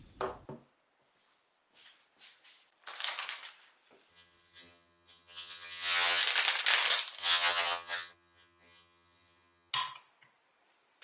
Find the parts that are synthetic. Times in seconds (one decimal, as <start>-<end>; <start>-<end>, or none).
4.1-6.2; 7.2-9.7